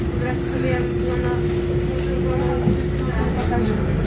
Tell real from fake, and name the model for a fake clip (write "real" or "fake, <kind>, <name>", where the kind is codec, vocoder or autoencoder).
real